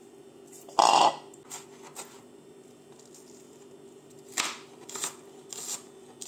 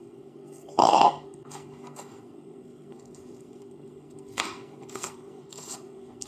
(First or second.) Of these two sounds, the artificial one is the second